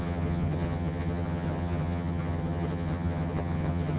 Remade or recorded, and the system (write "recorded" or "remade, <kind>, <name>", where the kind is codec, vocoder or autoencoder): remade, vocoder, HiFi-GAN